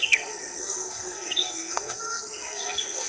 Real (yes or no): no